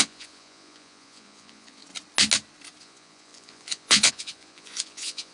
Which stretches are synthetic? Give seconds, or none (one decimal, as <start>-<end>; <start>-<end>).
0.0-1.8; 2.8-5.3